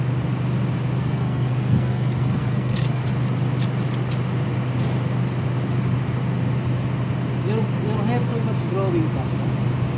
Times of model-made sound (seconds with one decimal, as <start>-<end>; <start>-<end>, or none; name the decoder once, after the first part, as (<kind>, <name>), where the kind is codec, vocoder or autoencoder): 1.0-3.0 (codec, SNAC)